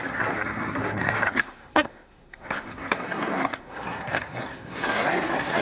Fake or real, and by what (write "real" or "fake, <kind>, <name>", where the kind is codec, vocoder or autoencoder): fake, codec, SNAC